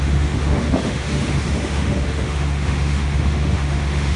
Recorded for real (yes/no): no